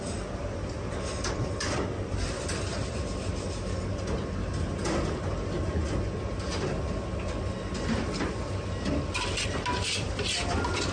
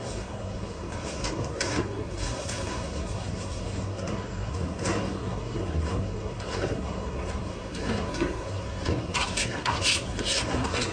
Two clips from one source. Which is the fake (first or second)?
second